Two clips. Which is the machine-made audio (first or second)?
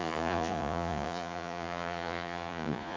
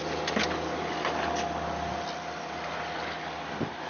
first